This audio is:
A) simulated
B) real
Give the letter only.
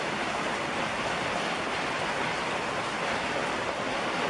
B